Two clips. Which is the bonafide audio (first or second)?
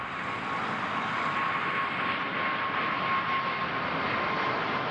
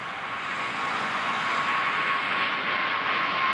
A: first